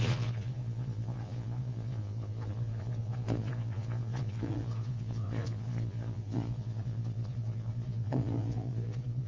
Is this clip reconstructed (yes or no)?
yes